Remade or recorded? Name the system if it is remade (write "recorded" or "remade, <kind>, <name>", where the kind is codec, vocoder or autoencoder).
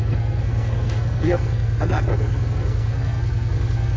remade, codec, SNAC